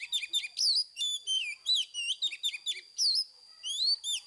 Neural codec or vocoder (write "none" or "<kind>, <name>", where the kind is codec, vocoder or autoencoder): none